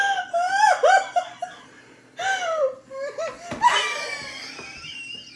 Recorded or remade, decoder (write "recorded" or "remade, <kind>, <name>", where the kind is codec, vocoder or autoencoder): recorded